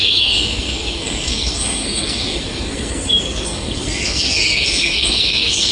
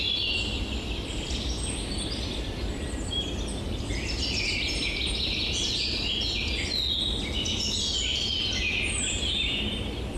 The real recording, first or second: second